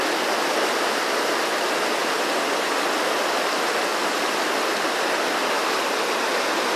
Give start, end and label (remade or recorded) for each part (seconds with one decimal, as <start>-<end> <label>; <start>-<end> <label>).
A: 0.0-6.8 recorded